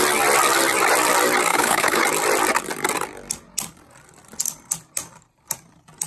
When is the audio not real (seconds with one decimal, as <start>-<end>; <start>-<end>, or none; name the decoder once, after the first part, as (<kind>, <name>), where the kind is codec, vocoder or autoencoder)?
1.5-2.0 (codec, HILCodec)